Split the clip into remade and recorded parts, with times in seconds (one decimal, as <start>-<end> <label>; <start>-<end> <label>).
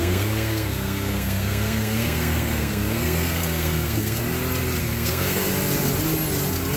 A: 0.0-4.2 remade; 4.2-4.8 recorded; 4.8-5.5 remade; 5.5-6.8 recorded